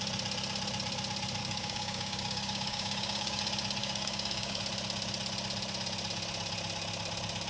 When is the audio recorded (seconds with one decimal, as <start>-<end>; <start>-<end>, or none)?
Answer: 0.0-1.4; 3.4-3.8; 4.6-7.5